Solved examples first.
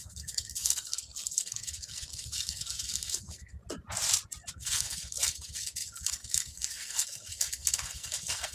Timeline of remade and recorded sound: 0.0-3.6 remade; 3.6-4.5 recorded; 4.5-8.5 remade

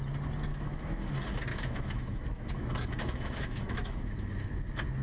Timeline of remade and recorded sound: 0.0-0.5 recorded; 0.5-1.1 remade; 1.1-1.5 recorded; 1.5-4.5 remade; 4.5-5.0 recorded

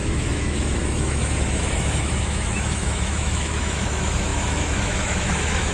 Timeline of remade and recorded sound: 0.0-5.7 remade

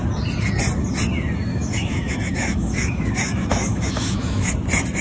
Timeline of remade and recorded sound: 0.0-1.5 recorded; 1.5-4.5 remade; 4.5-5.0 recorded